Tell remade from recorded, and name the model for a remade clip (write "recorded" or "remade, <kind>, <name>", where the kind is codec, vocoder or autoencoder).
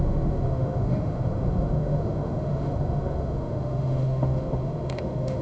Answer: remade, autoencoder, DAC-VAE